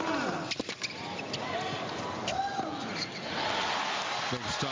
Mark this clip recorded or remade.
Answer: recorded